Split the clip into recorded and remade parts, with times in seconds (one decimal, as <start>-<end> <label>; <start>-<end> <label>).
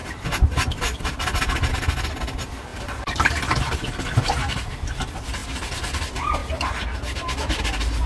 0.0-8.1 recorded